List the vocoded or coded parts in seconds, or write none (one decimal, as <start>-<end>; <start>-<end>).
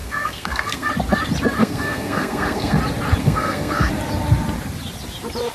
0.0-0.9; 1.6-2.8; 3.2-3.9